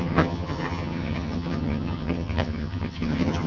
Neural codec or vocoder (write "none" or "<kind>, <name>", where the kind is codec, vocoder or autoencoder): vocoder, HiFi-GAN